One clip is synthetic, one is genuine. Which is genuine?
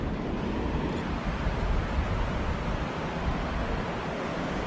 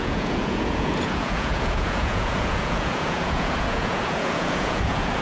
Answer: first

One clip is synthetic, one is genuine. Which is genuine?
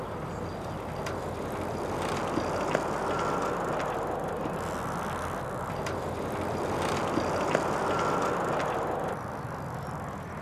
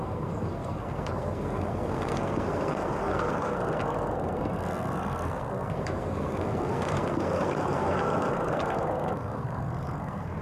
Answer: first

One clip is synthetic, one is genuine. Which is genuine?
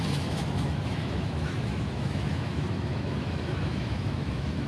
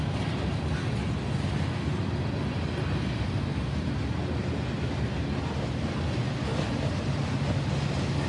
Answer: second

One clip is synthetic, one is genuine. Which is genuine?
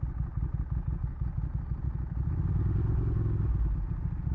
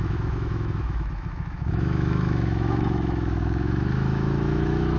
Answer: first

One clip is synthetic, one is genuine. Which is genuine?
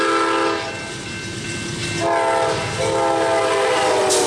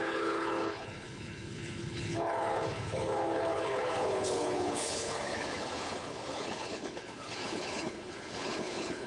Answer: first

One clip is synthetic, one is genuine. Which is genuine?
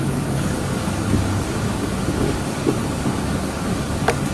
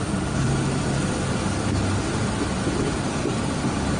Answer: second